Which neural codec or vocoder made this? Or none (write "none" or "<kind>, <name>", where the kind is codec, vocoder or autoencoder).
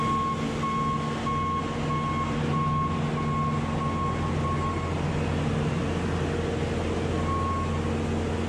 none